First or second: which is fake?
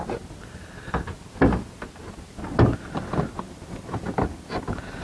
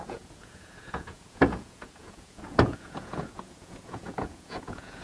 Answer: second